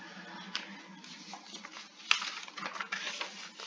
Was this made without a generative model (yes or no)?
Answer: yes